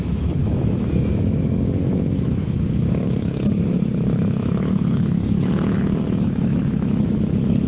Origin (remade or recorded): remade